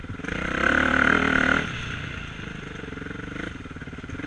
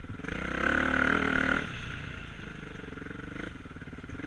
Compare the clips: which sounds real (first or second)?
second